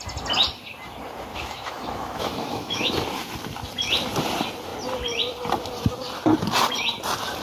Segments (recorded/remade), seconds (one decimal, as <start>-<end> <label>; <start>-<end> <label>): 0.0-1.3 recorded; 1.3-2.9 remade; 2.9-7.4 recorded